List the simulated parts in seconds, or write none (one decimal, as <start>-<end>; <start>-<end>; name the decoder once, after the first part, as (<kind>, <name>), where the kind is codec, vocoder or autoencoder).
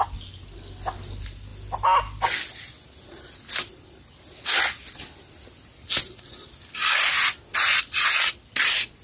none